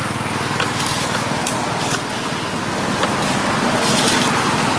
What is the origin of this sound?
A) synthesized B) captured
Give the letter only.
B